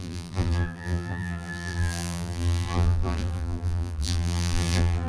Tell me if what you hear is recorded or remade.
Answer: remade